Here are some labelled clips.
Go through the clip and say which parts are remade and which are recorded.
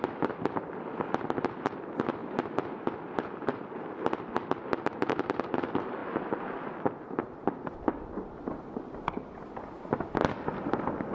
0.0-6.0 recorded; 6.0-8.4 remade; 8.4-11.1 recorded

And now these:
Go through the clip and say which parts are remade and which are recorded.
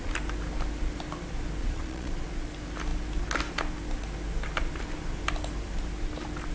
0.0-1.6 recorded; 1.6-2.1 remade; 2.1-6.5 recorded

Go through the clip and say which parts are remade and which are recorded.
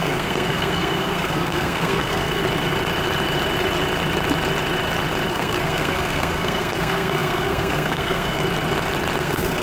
0.0-2.4 remade; 2.4-5.3 recorded; 5.3-8.4 remade; 8.4-9.2 recorded; 9.2-9.6 remade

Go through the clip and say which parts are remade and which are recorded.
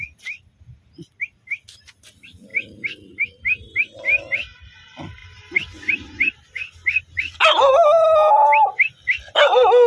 0.0-9.9 recorded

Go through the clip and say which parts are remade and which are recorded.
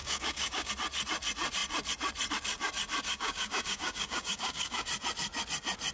0.0-0.7 remade; 0.7-3.1 recorded; 3.1-4.9 remade; 4.9-5.9 recorded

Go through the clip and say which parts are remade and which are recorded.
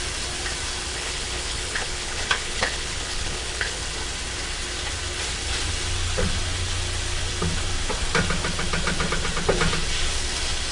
0.0-0.9 recorded; 0.9-3.8 remade; 3.8-10.7 recorded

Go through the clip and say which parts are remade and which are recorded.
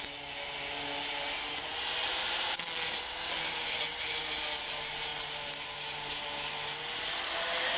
0.0-7.8 recorded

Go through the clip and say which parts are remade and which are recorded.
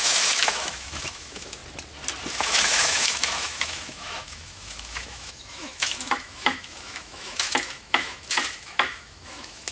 0.0-1.6 remade; 1.6-2.3 recorded; 2.3-9.7 remade